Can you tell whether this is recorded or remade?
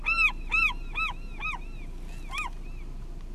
recorded